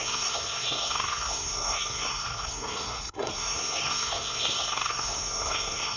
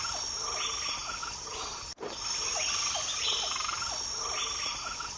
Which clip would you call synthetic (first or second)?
first